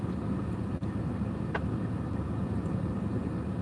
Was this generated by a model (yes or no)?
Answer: no